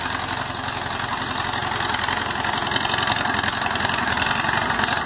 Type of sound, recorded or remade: recorded